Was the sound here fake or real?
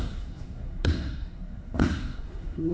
fake